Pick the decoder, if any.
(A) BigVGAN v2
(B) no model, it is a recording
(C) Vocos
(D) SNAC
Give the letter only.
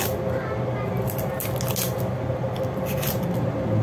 B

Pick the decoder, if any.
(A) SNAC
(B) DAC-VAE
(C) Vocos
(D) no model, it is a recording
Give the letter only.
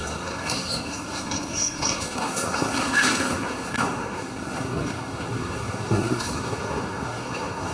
A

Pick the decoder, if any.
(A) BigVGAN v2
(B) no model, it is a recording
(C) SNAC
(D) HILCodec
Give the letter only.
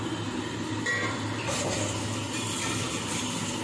B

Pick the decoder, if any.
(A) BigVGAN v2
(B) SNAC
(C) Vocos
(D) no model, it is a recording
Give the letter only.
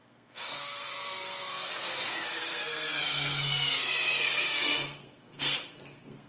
B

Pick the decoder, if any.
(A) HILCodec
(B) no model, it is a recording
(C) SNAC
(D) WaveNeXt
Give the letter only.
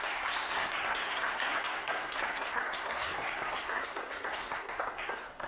C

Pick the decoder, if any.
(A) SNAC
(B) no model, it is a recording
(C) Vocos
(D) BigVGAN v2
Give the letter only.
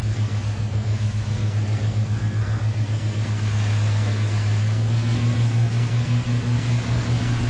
A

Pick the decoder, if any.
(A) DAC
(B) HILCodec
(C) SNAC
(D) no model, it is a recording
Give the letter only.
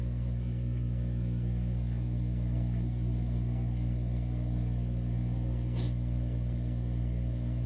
C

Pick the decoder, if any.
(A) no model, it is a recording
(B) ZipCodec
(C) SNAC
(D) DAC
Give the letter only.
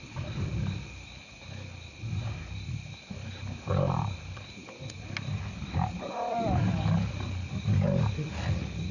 A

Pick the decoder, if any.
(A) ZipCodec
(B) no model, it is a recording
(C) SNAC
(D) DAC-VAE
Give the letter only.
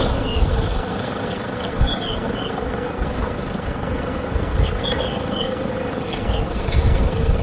C